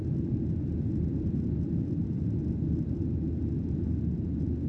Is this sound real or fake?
real